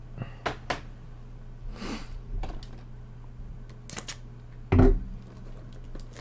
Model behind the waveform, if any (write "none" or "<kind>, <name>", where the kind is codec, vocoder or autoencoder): none